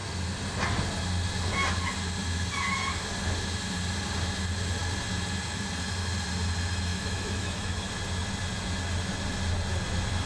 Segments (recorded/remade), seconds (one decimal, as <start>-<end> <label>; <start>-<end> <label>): 0.0-6.9 recorded; 6.9-7.9 remade; 7.9-10.3 recorded